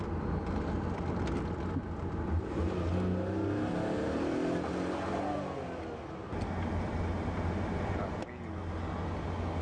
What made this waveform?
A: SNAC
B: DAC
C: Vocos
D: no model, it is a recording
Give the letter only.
D